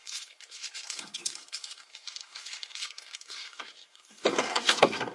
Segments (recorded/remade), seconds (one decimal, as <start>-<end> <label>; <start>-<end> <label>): 0.0-5.1 remade

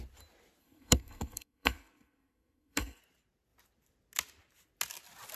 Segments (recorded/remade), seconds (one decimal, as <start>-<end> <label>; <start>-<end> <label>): 0.0-0.6 recorded; 0.6-3.0 remade; 3.0-5.4 recorded

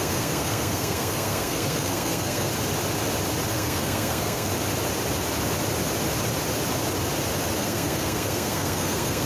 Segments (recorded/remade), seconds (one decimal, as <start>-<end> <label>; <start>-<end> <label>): 0.0-2.5 remade; 2.5-3.5 recorded; 3.5-4.5 remade; 4.5-7.6 recorded; 7.6-9.3 remade